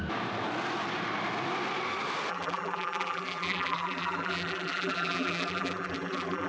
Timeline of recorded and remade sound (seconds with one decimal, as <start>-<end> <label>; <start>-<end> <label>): 0.0-2.3 recorded; 2.3-6.5 remade